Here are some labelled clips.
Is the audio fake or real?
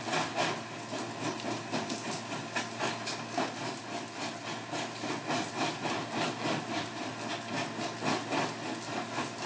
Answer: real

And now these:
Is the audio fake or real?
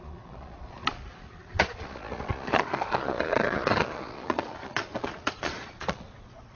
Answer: fake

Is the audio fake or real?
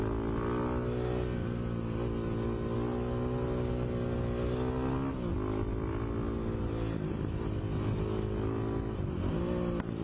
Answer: real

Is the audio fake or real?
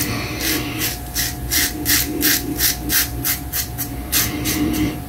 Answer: real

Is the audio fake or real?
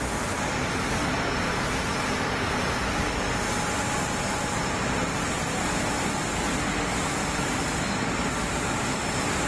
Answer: real